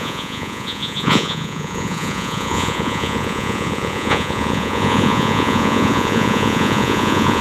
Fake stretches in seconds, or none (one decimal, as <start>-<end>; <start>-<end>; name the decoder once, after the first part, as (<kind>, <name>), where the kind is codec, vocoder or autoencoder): 0.0-7.4 (vocoder, Vocos)